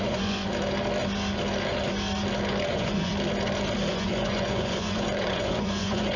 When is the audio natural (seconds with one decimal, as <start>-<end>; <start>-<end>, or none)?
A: 0.5-2.7; 3.1-3.9